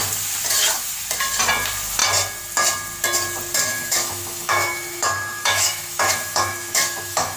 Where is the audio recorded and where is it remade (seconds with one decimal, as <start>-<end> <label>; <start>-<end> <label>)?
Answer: 0.0-3.7 recorded; 3.7-7.4 remade